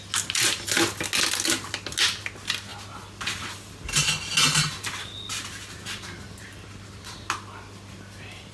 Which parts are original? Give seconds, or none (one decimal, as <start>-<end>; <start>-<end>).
0.0-8.5